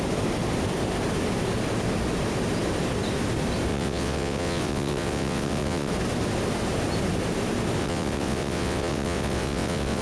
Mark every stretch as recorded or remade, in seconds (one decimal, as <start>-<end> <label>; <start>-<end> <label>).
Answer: 0.0-3.7 recorded; 3.7-5.9 remade; 5.9-7.8 recorded; 7.8-10.0 remade